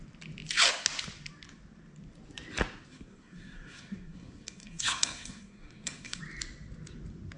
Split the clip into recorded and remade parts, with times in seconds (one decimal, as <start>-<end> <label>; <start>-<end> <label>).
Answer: 0.0-2.9 recorded; 2.9-6.2 remade; 6.2-7.4 recorded